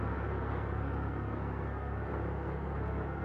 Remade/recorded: remade